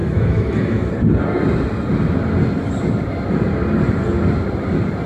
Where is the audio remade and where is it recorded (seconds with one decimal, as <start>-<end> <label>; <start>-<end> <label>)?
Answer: 0.0-0.9 remade; 0.9-5.1 recorded